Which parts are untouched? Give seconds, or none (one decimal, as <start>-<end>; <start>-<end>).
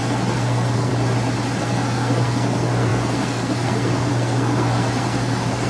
0.9-1.6